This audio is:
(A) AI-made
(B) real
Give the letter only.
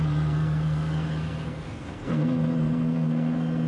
A